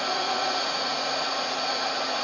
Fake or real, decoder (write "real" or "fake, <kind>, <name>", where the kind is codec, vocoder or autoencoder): fake, vocoder, Vocos